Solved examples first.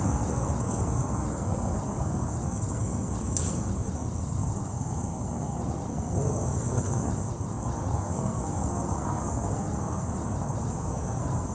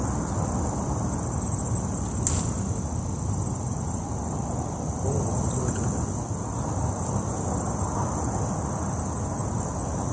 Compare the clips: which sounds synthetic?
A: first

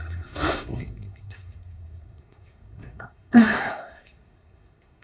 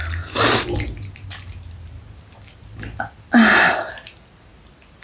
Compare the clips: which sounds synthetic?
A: first